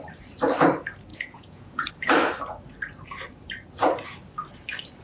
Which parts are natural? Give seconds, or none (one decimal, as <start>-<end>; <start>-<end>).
0.0-1.1; 1.9-5.0